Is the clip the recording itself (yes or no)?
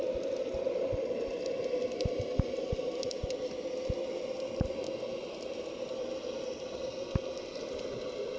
yes